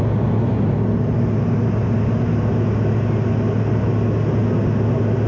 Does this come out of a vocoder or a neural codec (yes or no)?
no